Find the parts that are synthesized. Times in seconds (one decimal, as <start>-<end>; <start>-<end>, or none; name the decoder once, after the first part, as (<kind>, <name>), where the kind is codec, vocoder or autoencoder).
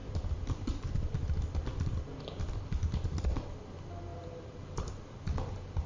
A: 4.1-5.0 (vocoder, BigVGAN v2)